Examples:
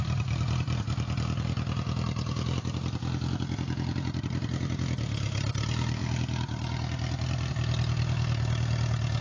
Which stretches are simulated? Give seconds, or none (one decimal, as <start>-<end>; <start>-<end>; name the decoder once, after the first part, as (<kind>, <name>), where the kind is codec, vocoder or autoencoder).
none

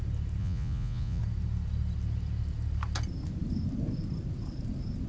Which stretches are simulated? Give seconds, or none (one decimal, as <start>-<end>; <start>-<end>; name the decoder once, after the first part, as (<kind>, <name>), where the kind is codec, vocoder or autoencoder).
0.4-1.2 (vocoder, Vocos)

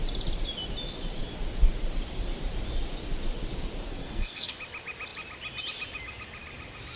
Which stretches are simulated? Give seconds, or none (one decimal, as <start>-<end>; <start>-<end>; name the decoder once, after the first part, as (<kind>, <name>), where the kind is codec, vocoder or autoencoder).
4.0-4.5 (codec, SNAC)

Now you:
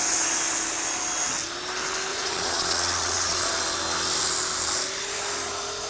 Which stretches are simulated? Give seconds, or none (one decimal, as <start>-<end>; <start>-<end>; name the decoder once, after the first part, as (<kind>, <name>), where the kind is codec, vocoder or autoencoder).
2.1-3.5 (vocoder, Vocos)

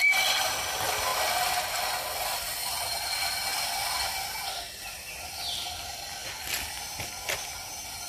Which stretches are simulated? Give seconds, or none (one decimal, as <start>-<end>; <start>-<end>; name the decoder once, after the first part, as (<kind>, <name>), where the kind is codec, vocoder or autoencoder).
none